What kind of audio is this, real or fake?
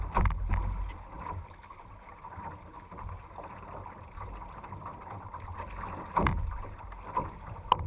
real